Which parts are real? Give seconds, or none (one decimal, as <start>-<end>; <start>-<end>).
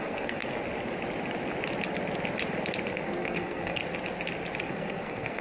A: 0.4-2.8; 3.8-4.7